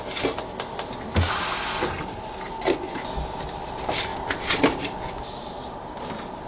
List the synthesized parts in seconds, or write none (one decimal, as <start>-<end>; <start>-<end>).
none